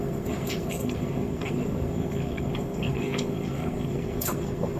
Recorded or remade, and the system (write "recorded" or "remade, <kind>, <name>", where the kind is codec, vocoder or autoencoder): remade, codec, SNAC